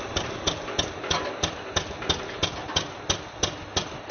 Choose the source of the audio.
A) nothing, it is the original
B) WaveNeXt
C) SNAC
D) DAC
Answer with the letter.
A